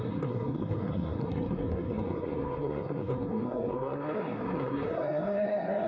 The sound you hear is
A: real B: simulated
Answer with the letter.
B